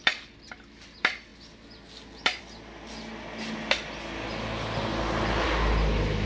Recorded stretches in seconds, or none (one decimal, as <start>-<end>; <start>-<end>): 0.0-6.3

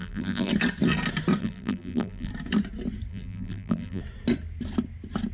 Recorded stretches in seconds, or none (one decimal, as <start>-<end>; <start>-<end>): 0.5-1.4; 2.3-3.1; 4.0-5.3

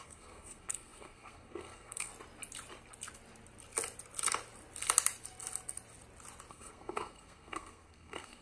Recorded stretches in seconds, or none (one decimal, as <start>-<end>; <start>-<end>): 2.1-6.5

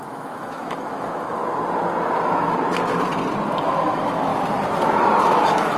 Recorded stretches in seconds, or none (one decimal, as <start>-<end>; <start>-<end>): 1.4-3.6; 4.3-5.2

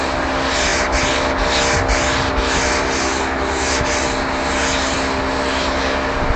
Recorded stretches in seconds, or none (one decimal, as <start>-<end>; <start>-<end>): 0.0-6.4